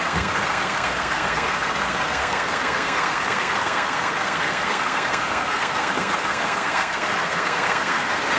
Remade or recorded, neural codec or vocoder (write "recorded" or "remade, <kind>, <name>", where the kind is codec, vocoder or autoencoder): remade, codec, SNAC